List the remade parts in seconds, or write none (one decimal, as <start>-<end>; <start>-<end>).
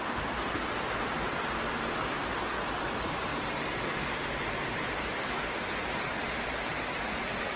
none